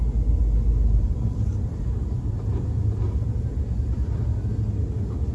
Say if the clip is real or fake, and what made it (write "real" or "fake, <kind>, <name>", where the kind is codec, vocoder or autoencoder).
real